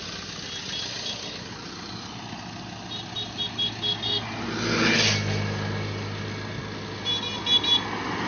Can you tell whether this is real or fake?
real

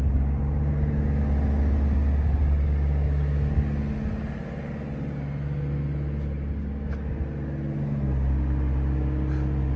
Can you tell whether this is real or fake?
real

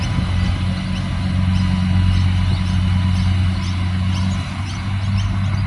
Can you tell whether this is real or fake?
real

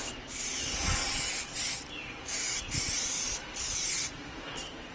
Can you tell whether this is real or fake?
real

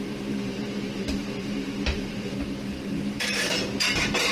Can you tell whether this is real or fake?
fake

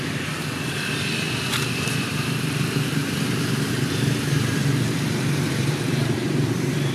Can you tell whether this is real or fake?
fake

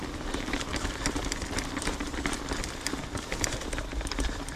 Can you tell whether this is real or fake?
real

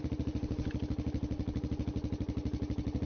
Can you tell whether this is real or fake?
real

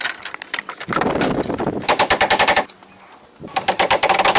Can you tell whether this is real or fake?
real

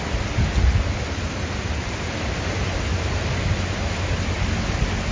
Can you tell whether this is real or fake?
real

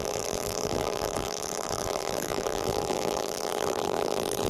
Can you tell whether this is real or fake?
fake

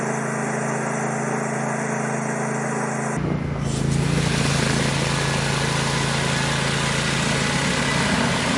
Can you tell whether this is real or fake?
real